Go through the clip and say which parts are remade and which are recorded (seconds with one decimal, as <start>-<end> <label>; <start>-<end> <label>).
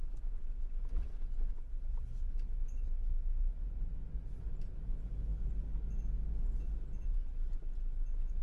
0.0-8.4 recorded